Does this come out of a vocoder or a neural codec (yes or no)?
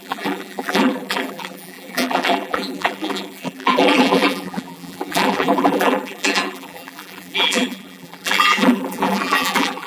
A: yes